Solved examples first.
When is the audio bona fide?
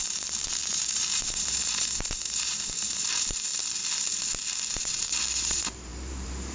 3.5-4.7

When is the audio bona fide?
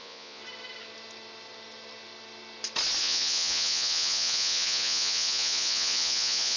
0.4-3.0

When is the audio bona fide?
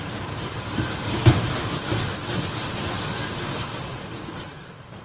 0.0-3.9; 4.6-5.0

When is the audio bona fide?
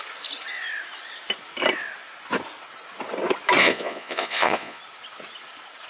0.0-3.6; 4.8-5.9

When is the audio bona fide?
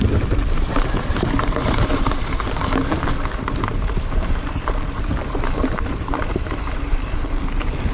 2.6-3.7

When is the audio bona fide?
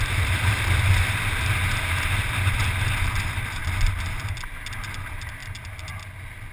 0.0-6.5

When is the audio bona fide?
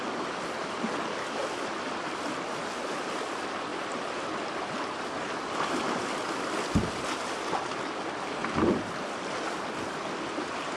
0.0-0.6; 1.4-3.7; 5.3-8.4; 9.7-10.8